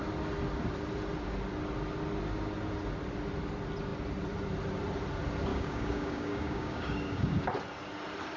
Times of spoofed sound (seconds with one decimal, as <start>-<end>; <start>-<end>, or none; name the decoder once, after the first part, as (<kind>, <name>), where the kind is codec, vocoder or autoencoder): 5.5-7.4 (codec, DAC)